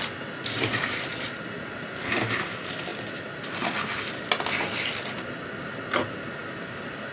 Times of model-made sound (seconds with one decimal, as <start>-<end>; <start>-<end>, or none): none